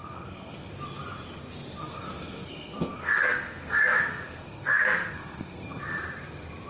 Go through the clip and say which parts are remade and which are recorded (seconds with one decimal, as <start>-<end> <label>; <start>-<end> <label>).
0.0-0.7 remade; 0.7-1.8 recorded; 1.8-5.8 remade; 5.8-6.7 recorded